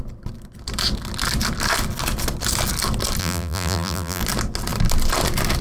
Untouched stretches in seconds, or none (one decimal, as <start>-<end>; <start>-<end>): 0.0-3.2; 4.2-5.6